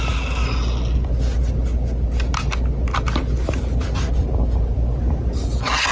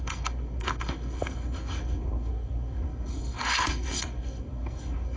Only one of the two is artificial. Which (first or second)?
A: second